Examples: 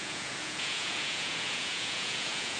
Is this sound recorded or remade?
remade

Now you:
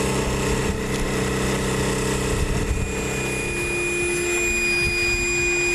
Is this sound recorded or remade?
recorded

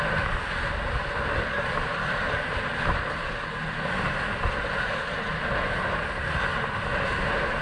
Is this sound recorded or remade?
recorded